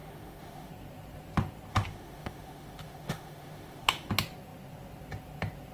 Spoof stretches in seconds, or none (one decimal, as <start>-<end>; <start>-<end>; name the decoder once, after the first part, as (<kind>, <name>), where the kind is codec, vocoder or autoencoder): 0.0-0.7 (autoencoder, DAC-VAE); 1.7-4.1